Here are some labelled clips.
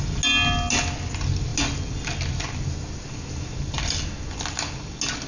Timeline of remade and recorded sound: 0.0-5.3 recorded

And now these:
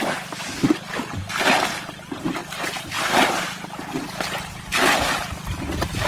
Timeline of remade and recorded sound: 0.0-6.1 recorded